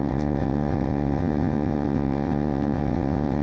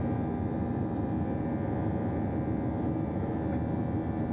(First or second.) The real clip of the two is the second